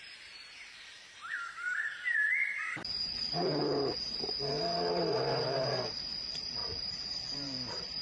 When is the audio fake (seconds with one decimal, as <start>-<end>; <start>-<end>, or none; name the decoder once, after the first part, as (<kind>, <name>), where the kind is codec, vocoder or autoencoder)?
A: 0.0-8.0 (vocoder, BigVGAN v2)